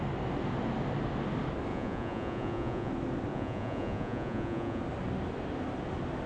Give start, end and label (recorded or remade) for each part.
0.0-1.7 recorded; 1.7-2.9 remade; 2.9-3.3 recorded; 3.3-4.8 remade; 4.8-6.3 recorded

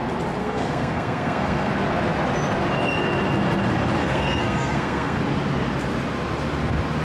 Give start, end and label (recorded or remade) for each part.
0.0-0.4 recorded; 0.4-1.7 remade; 1.7-4.0 recorded; 4.0-5.2 remade; 5.2-7.0 recorded

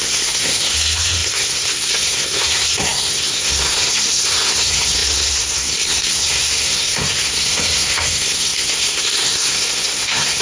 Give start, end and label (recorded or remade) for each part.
0.0-10.4 remade

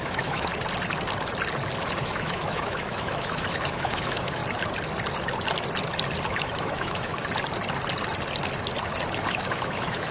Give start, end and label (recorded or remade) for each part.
0.0-0.5 remade; 0.5-2.0 recorded; 2.0-4.4 remade; 4.4-6.3 recorded; 6.3-7.1 remade; 7.1-9.3 recorded; 9.3-10.1 remade

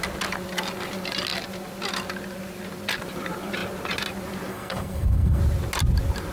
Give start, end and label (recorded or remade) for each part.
0.0-4.5 recorded; 4.5-5.4 remade; 5.4-6.3 recorded

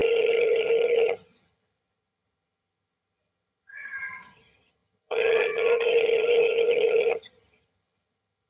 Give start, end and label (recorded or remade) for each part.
0.0-8.5 remade

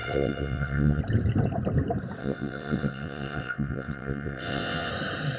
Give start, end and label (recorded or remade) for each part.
0.0-1.0 remade; 1.0-2.2 recorded; 2.2-4.9 remade; 4.9-5.4 recorded

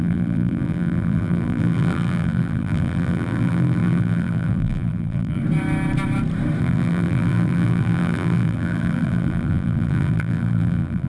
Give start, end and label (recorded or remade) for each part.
0.0-5.4 remade; 5.4-6.6 recorded; 6.6-11.1 remade